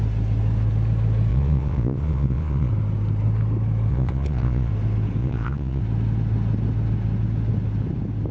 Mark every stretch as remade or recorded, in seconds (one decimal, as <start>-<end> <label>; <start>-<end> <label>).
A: 0.0-1.3 recorded; 1.3-2.7 remade; 2.7-3.9 recorded; 3.9-4.7 remade; 4.7-5.2 recorded; 5.2-5.8 remade; 5.8-8.3 recorded